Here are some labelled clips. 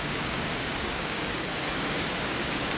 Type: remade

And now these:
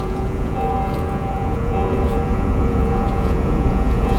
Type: remade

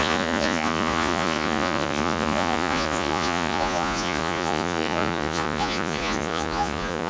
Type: remade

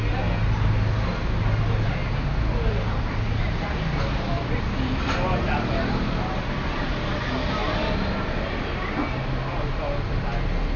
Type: recorded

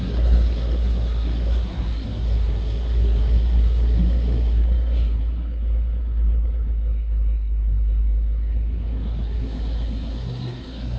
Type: remade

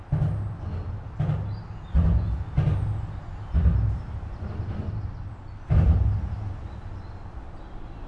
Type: recorded